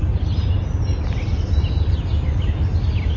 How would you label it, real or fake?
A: real